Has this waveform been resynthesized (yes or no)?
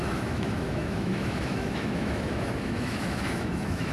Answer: yes